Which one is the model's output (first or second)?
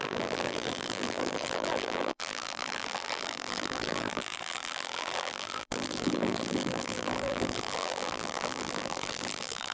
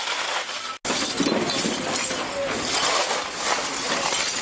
first